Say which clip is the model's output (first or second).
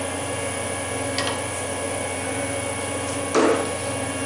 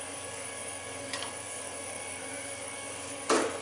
second